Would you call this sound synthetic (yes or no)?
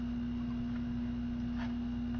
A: no